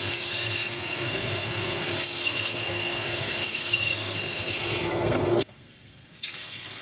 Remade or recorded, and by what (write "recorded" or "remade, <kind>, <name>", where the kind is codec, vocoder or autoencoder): remade, codec, SNAC